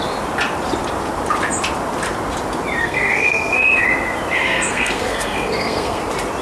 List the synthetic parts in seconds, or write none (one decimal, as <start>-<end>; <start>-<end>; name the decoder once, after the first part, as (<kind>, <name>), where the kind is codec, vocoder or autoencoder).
2.8-3.8 (codec, SNAC); 4.4-6.0